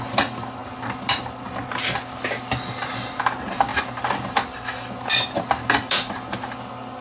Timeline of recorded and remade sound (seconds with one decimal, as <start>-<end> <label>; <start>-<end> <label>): 0.0-7.0 recorded